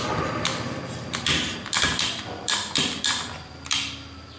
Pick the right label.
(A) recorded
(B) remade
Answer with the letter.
B